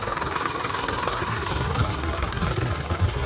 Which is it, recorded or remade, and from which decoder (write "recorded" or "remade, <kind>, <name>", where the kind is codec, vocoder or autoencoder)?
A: remade, codec, SNAC